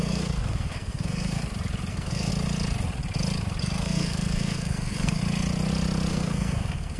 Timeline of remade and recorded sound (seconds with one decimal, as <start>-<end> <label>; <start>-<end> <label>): 0.0-1.4 remade; 1.4-1.9 recorded; 1.9-2.3 remade; 2.3-3.6 recorded; 3.6-5.2 remade; 5.2-6.1 recorded; 6.1-7.0 remade